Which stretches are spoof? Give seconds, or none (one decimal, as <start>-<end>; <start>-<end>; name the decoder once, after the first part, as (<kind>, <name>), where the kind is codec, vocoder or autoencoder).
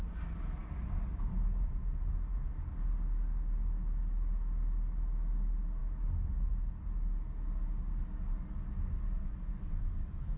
none